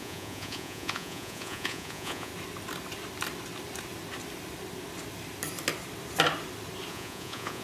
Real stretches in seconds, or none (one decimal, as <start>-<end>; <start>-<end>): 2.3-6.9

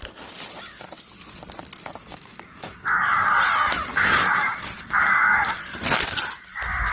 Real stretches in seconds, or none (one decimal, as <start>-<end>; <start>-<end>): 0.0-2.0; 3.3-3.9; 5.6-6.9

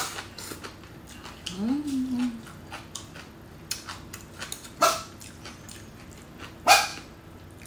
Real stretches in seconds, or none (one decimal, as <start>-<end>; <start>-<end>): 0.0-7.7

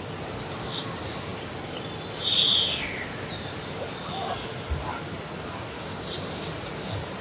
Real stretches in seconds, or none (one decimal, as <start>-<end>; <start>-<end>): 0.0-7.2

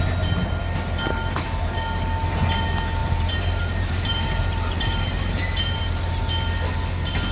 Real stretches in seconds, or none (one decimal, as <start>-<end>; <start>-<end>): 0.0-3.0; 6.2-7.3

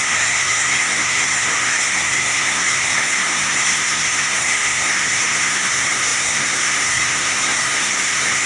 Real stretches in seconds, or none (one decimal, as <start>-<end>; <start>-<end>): none

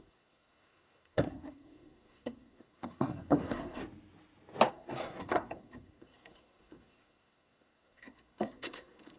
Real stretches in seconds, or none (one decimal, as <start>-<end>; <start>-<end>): 3.8-4.7

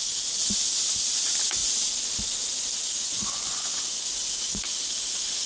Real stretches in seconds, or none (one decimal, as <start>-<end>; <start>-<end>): 0.0-3.0; 4.6-5.5